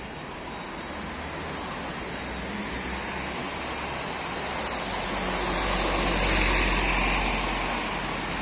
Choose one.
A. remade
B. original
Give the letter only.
B